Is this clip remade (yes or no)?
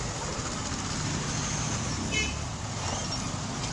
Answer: no